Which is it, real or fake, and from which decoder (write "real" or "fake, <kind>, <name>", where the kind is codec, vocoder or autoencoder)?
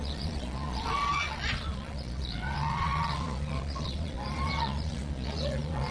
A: fake, vocoder, Vocos